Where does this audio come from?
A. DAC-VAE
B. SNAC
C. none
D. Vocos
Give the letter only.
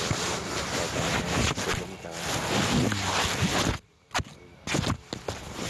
C